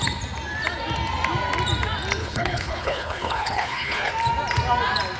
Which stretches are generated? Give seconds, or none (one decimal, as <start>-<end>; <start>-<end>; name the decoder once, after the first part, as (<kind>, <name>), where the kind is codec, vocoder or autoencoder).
2.2-4.1 (codec, HILCodec)